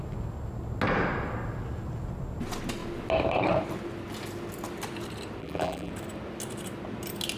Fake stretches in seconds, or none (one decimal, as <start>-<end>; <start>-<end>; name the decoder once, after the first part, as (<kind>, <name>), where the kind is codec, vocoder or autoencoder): 5.4-5.9 (vocoder, BigVGAN v2)